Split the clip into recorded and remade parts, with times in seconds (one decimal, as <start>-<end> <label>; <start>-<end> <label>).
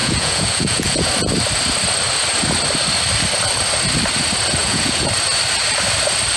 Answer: 0.0-1.1 remade; 1.1-4.6 recorded; 4.6-5.1 remade; 5.1-6.4 recorded